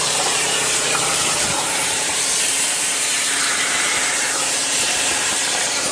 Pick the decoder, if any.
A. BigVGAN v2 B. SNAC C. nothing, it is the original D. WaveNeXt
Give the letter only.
A